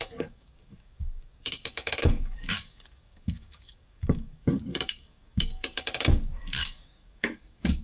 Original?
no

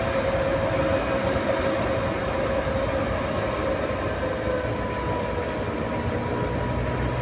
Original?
yes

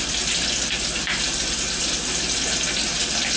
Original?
yes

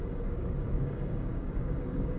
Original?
no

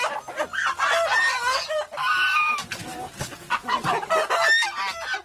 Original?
yes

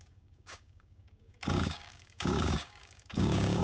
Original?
no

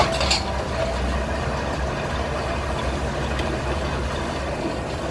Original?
yes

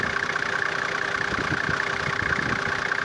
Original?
yes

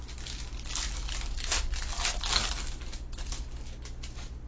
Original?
yes